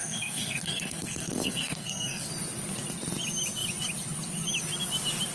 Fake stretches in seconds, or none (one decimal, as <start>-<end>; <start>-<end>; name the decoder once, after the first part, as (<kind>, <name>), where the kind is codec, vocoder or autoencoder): 0.0-2.3 (codec, SNAC)